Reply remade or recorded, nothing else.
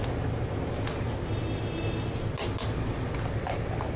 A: recorded